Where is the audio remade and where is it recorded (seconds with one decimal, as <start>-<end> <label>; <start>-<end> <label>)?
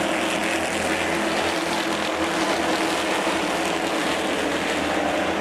0.0-5.4 recorded